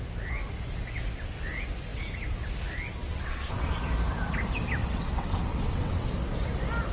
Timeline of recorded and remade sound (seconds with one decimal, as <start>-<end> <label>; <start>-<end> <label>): 0.0-3.0 recorded; 3.0-3.7 remade; 3.7-4.8 recorded; 4.8-6.1 remade; 6.1-6.9 recorded